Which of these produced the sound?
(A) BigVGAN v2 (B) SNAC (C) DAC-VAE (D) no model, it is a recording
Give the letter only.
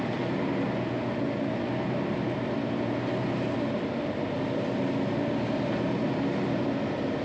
D